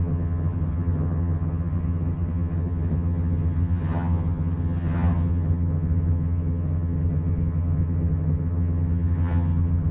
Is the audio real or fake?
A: fake